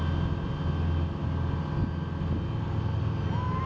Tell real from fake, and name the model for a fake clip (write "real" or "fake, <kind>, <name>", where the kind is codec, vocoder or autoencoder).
real